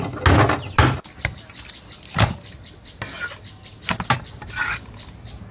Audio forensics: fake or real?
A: real